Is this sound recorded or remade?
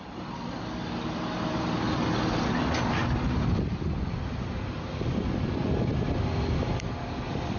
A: recorded